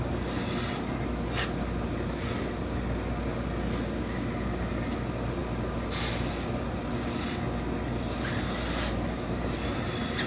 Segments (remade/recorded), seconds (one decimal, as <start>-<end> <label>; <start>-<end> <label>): 0.0-10.3 recorded